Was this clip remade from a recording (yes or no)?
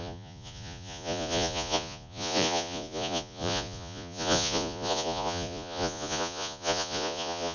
yes